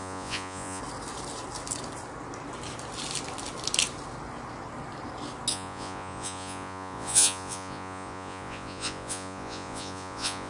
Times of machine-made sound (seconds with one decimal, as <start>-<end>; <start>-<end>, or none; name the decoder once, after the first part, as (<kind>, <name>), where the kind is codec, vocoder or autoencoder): 0.0-0.8 (vocoder, Vocos); 5.5-10.5